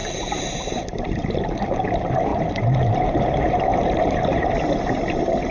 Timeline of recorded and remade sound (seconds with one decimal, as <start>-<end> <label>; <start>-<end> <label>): 0.0-0.6 remade; 0.6-3.7 recorded; 3.7-4.5 remade; 4.5-5.5 recorded